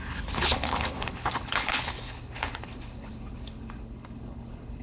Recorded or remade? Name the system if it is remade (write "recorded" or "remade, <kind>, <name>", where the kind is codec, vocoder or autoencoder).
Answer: remade, codec, HILCodec